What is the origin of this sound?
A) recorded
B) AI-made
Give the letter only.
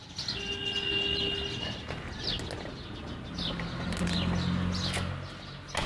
A